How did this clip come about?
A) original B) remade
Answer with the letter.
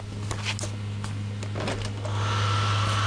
A